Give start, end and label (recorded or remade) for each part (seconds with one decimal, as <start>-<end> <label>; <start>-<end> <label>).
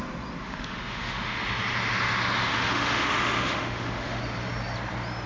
0.0-0.4 recorded; 0.4-1.4 remade; 1.4-2.5 recorded; 2.5-4.2 remade; 4.2-5.3 recorded